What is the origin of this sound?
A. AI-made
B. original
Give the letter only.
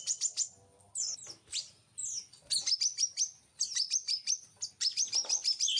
B